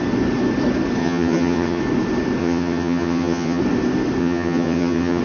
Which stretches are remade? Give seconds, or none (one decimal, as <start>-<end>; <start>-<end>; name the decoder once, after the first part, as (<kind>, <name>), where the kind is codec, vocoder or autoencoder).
1.0-1.8 (vocoder, HiFi-GAN); 2.4-3.6; 4.2-5.2